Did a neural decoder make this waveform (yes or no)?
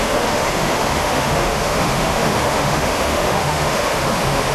yes